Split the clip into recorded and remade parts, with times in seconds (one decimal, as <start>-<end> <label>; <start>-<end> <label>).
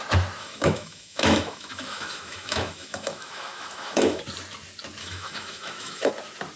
0.0-0.4 recorded; 0.4-4.2 remade; 4.2-5.0 recorded; 5.0-6.1 remade; 6.1-6.6 recorded